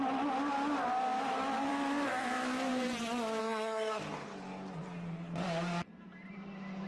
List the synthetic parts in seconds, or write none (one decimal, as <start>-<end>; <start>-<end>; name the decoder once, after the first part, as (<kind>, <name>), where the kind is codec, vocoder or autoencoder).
3.4-4.0 (codec, SNAC)